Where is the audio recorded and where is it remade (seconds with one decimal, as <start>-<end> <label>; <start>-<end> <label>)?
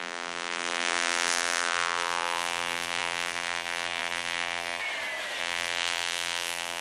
0.0-4.8 remade; 4.8-5.4 recorded; 5.4-6.8 remade